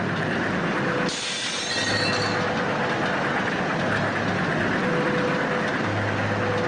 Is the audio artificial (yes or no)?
no